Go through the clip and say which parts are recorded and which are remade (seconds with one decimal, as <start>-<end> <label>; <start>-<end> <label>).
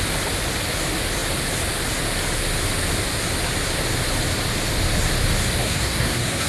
0.0-5.6 recorded; 5.6-6.5 remade